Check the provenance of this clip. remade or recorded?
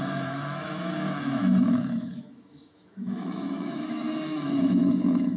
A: remade